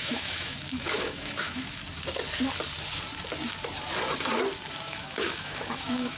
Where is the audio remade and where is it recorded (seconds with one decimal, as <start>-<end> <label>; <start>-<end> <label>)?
0.0-1.8 remade; 1.8-4.8 recorded; 4.8-6.2 remade